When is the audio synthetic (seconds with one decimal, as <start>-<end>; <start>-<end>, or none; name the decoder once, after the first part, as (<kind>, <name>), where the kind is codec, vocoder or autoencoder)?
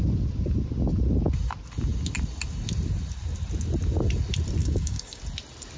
4.6-5.2 (codec, DAC)